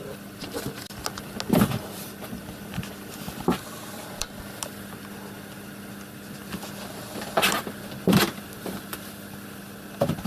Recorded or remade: recorded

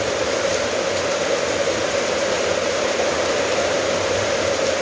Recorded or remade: recorded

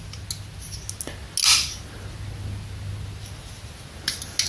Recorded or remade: recorded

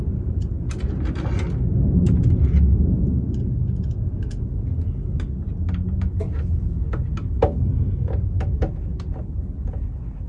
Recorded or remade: recorded